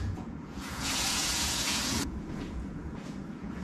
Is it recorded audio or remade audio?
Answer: remade